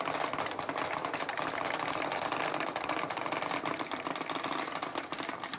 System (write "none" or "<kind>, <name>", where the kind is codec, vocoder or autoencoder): none